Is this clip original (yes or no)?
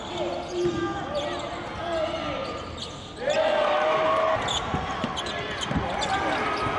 yes